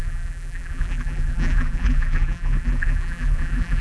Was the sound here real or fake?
fake